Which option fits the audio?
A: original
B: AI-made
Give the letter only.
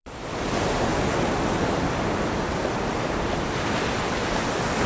B